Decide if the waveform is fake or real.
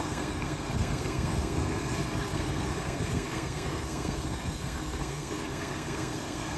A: fake